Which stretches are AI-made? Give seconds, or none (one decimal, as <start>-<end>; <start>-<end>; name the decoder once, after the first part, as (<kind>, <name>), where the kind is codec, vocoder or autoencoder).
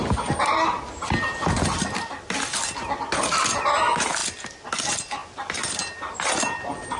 none